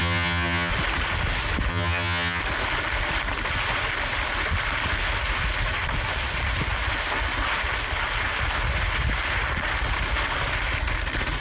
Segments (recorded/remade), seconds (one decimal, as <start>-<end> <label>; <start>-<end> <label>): 0.0-0.7 remade; 0.7-1.7 recorded; 1.7-2.4 remade; 2.4-11.4 recorded